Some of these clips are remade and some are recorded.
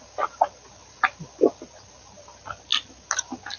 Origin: recorded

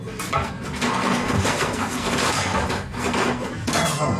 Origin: remade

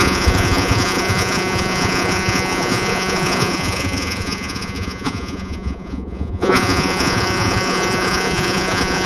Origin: remade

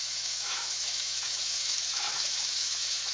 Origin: remade